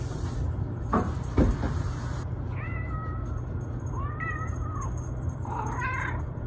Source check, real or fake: fake